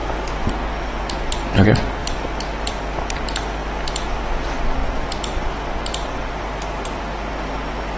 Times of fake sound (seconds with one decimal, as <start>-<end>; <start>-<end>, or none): 2.0-3.2; 4.8-7.0